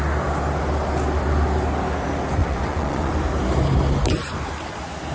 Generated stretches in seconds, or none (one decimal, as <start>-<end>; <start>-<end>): 2.4-3.1